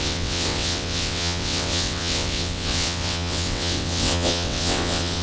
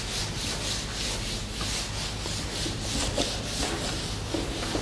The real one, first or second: second